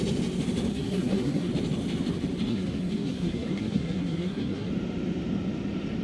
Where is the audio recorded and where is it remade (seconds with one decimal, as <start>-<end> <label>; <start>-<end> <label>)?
0.0-0.7 recorded; 0.7-1.5 remade; 1.5-2.5 recorded; 2.5-4.7 remade; 4.7-6.0 recorded